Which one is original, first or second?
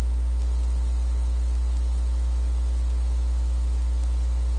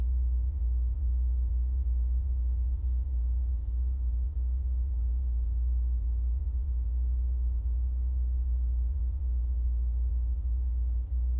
first